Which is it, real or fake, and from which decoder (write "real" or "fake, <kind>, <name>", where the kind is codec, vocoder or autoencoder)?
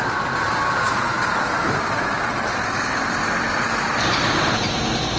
real